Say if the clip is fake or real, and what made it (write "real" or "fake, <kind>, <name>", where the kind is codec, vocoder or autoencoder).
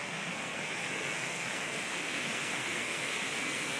fake, codec, SNAC